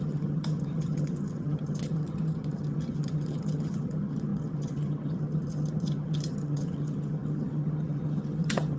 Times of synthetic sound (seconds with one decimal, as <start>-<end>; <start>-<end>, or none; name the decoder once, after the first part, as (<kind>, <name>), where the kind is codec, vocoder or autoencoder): 0.0-8.8 (vocoder, HiFi-GAN)